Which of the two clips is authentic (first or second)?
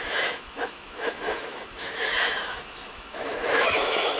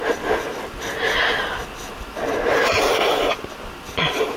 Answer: second